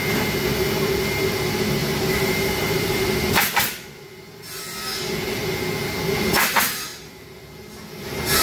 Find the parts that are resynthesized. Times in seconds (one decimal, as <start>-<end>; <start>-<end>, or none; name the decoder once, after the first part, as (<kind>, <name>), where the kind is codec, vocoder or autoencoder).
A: 1.8-3.1 (vocoder, BigVGAN v2)